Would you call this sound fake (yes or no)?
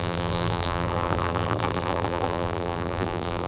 yes